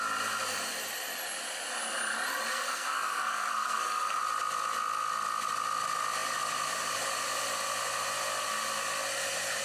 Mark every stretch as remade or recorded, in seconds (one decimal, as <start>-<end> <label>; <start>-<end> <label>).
0.0-2.5 recorded; 2.5-4.2 remade; 4.2-9.6 recorded